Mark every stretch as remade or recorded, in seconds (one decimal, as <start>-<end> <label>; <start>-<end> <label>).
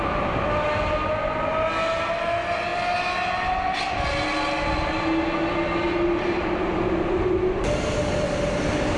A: 0.0-9.0 recorded